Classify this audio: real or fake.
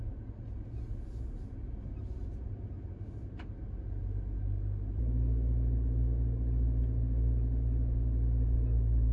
real